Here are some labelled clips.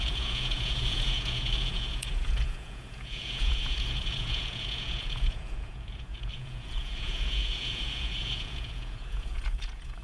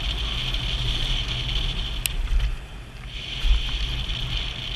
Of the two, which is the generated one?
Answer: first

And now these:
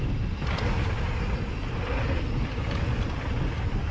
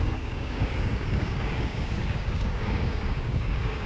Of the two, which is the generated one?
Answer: second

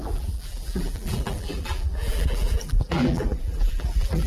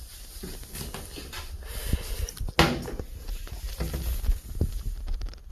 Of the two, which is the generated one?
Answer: first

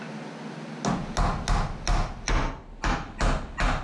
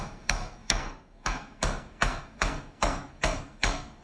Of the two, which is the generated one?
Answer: second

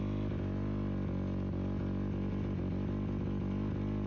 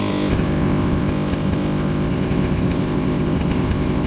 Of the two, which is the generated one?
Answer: second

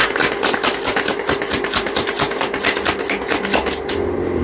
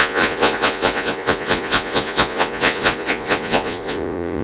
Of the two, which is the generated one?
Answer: second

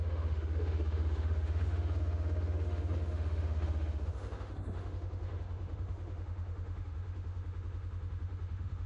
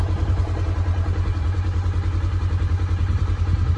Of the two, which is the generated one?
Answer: first